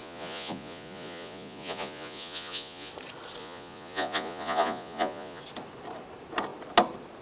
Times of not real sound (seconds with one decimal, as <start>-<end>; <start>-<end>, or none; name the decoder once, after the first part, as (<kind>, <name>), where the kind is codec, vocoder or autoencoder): 0.0-2.9 (vocoder, Vocos); 3.4-5.4